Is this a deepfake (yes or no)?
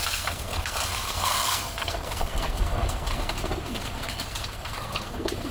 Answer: yes